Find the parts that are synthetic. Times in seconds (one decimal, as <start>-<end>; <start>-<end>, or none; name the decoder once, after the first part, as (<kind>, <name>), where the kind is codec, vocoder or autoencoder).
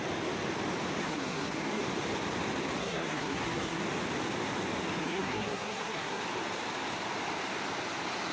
1.0-1.8 (codec, SNAC); 2.8-3.8; 5.0-6.2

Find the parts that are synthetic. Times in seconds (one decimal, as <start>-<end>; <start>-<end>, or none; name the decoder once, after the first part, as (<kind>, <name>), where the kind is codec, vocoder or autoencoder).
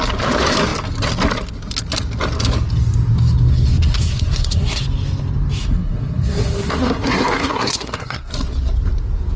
3.5-4.8 (codec, SNAC); 5.6-8.3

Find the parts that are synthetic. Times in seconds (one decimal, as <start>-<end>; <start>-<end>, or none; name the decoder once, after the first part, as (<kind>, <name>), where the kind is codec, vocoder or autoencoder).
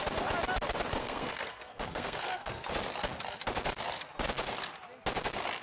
1.0-2.7 (codec, SNAC)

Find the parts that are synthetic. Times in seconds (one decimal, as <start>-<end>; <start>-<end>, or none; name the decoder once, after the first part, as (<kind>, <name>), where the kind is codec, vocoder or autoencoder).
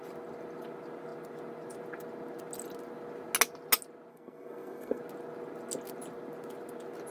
4.1-5.0 (codec, SNAC)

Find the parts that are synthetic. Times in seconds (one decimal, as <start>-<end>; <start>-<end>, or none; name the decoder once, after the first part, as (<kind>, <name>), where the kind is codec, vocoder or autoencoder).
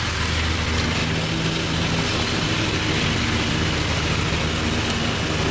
none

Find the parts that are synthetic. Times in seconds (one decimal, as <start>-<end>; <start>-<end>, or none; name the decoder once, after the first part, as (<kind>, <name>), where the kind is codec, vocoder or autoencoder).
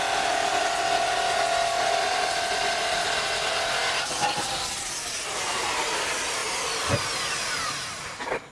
none